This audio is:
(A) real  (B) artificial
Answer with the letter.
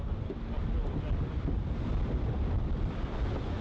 A